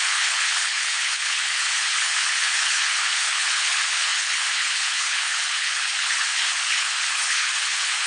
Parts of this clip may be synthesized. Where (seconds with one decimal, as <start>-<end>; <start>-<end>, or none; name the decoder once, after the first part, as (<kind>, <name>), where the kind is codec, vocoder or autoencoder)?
0.0-8.1 (codec, HILCodec)